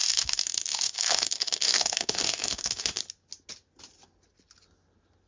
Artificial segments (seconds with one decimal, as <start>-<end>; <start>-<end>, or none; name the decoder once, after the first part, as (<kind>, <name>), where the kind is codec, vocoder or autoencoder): 0.0-3.0 (autoencoder, DAC-VAE)